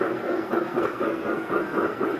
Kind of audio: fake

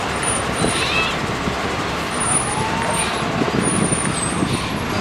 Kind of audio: real